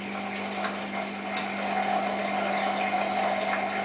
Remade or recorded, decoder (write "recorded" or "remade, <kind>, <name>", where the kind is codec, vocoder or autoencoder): recorded